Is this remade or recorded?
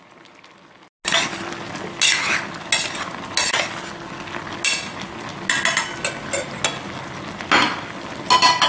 recorded